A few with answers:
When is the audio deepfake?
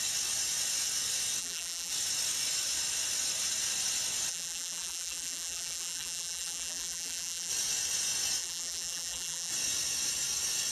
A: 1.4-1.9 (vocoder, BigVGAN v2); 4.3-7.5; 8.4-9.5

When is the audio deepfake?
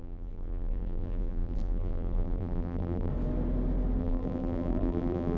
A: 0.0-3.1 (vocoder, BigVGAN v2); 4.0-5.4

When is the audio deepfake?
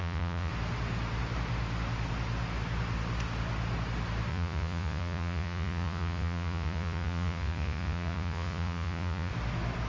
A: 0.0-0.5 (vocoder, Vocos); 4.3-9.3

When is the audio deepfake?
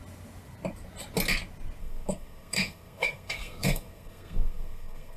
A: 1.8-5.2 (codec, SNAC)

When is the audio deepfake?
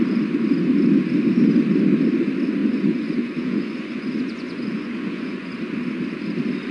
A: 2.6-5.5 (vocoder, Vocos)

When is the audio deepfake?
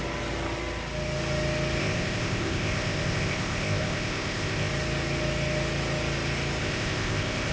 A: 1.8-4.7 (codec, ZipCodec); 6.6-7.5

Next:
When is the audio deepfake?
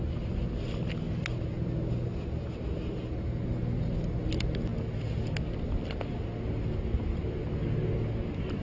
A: none